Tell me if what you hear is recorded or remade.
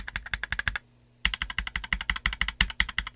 recorded